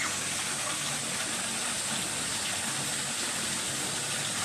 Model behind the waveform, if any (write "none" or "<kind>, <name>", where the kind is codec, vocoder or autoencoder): none